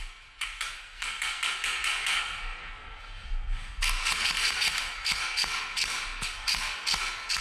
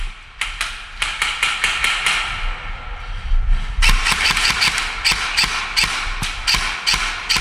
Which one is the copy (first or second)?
first